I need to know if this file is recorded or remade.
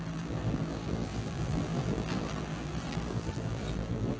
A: remade